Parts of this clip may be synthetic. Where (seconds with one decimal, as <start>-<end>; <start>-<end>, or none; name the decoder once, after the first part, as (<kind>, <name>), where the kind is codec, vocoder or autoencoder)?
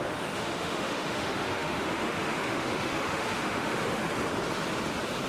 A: 0.0-4.0 (autoencoder, DAC-VAE)